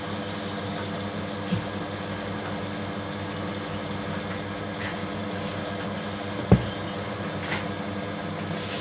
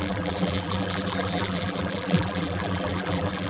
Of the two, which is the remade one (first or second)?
second